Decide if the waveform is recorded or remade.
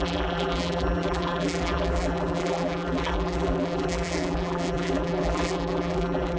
remade